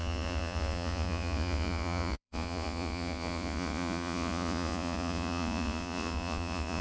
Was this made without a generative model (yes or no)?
no